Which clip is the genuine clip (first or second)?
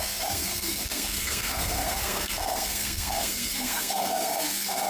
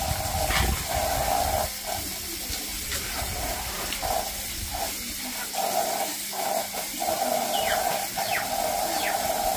second